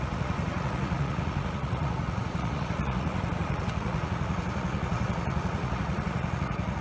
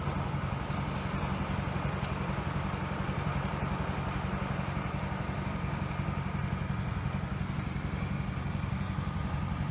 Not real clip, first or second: first